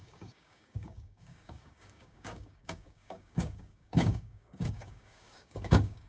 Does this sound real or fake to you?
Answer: fake